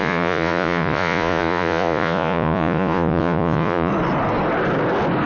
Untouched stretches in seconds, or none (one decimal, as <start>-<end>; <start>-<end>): 3.9-5.3